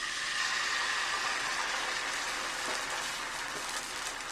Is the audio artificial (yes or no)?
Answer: no